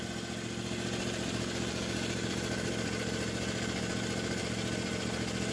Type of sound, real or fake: real